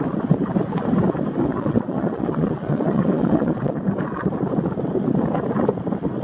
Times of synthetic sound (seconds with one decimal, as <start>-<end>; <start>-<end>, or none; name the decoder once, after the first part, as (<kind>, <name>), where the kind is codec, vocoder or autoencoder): 1.5-3.8 (vocoder, Vocos)